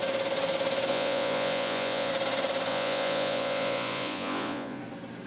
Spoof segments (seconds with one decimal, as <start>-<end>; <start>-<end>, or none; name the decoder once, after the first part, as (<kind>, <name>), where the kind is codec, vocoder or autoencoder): 0.9-2.1 (vocoder, Vocos); 2.7-4.8

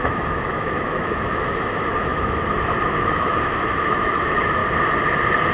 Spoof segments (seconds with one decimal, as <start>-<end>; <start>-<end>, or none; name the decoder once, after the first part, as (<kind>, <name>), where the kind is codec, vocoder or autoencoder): 0.0-4.6 (autoencoder, DAC-VAE)

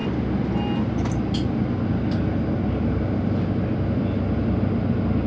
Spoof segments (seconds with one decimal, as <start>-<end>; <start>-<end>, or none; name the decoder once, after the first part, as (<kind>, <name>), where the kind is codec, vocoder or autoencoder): none

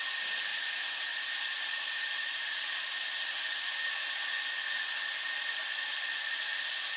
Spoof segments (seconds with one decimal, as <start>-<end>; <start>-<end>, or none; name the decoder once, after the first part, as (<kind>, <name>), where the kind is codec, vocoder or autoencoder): none

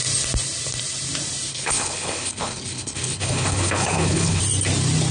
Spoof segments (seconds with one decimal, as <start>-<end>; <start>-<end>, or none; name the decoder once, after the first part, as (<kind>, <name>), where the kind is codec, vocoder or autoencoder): 1.5-4.4 (codec, HILCodec)